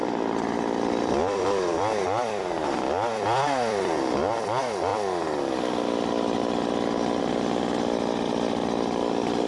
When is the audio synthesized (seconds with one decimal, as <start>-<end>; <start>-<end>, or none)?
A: 0.0-4.9; 7.2-9.5